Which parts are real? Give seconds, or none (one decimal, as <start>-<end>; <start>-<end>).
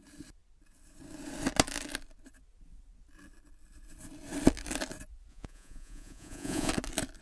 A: 0.0-5.3; 6.7-7.2